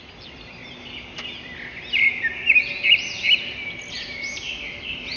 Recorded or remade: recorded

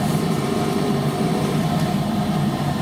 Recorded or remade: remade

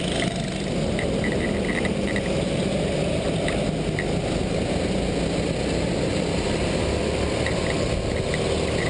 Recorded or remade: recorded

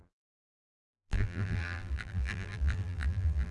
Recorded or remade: remade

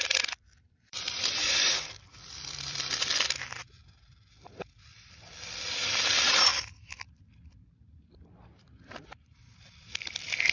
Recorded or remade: remade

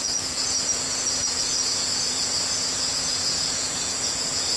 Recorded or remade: remade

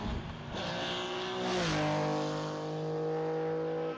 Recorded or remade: recorded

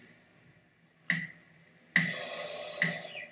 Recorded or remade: recorded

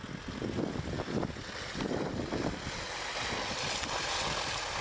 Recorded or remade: recorded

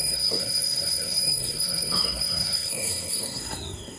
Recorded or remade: remade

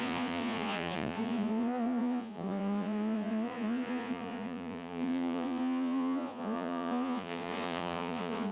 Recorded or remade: remade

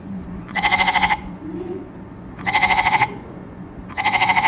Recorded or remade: remade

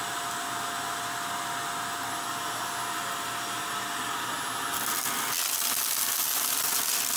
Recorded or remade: recorded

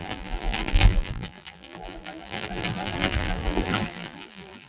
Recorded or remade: remade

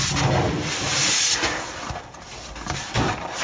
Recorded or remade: recorded